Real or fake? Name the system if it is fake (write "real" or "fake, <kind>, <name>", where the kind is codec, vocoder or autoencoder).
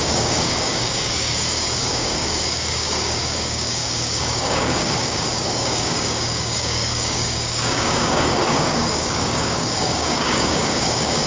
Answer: fake, codec, DAC